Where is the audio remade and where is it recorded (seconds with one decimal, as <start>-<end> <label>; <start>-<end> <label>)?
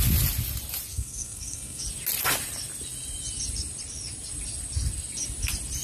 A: 0.0-0.9 recorded; 0.9-1.8 remade; 1.8-5.8 recorded